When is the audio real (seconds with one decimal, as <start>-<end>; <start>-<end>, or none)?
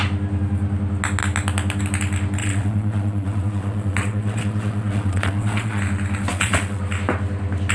0.0-2.4; 5.8-6.3; 6.8-7.7